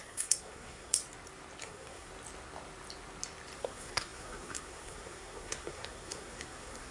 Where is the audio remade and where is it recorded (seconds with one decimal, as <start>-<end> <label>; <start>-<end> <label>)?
0.0-1.0 remade; 1.0-1.6 recorded; 1.6-2.1 remade; 2.1-3.6 recorded; 3.6-6.9 remade

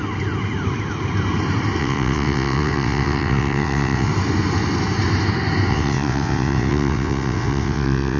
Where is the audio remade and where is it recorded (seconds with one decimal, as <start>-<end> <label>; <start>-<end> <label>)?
0.0-1.8 recorded; 1.8-4.1 remade; 4.1-5.7 recorded; 5.7-8.2 remade

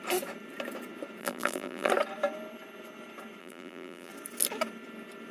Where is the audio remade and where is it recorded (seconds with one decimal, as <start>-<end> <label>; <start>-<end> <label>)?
0.0-1.2 recorded; 1.2-1.9 remade; 1.9-3.4 recorded; 3.4-4.1 remade; 4.1-5.3 recorded

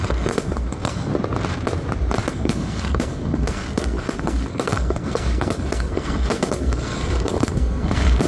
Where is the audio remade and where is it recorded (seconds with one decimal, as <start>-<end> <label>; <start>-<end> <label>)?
0.0-1.1 remade; 1.1-2.3 recorded; 2.3-8.3 remade

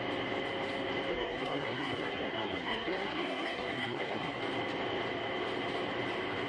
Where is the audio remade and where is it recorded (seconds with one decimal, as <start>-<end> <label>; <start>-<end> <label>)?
0.0-1.1 recorded; 1.1-4.4 remade; 4.4-6.5 recorded